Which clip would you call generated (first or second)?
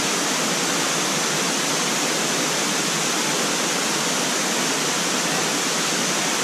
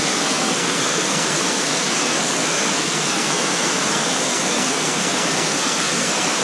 second